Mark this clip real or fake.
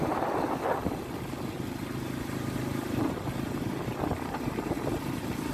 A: real